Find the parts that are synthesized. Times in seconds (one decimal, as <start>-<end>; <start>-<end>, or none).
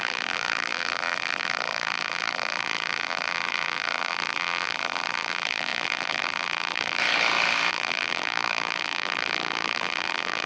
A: 0.0-7.0; 7.7-10.5